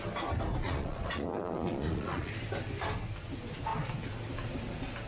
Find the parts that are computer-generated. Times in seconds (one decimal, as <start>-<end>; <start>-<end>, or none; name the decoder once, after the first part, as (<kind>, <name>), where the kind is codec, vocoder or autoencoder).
0.6-2.3 (vocoder, Vocos)